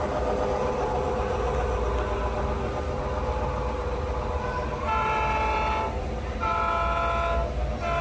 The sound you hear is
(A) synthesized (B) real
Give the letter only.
B